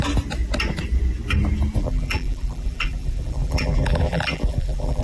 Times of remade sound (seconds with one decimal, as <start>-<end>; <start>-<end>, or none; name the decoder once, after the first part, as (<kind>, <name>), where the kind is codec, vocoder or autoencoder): 1.8-5.0 (vocoder, BigVGAN v2)